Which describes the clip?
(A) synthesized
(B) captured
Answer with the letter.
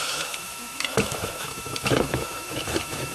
A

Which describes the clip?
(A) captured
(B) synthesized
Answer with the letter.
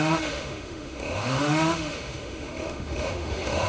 B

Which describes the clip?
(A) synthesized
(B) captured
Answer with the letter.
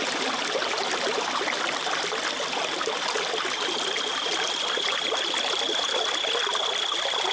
B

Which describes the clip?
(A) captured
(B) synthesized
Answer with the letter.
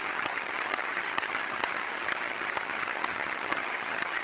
B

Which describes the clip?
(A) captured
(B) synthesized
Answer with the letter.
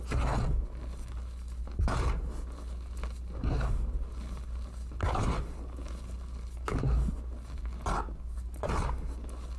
A